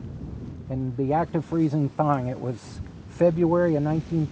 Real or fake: real